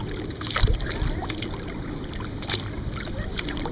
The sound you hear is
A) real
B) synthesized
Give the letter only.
A